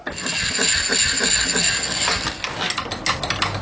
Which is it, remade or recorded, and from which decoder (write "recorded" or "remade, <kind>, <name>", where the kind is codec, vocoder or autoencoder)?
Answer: recorded